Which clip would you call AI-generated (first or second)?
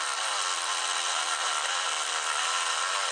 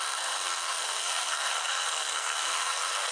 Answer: second